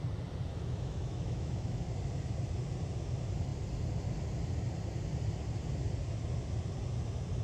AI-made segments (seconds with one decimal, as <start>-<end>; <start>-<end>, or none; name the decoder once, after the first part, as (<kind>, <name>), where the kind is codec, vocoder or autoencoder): 0.5-1.8 (autoencoder, DAC-VAE)